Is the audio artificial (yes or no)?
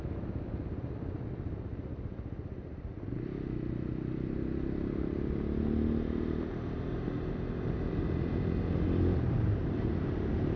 no